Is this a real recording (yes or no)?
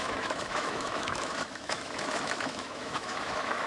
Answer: no